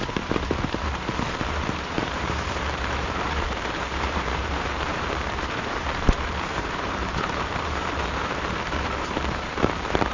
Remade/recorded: remade